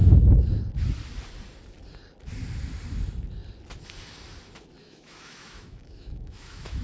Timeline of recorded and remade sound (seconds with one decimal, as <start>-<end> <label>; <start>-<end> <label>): 0.0-4.8 recorded; 4.8-6.8 remade